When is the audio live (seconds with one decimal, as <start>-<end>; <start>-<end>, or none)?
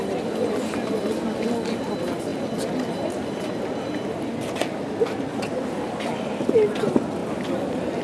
0.0-7.2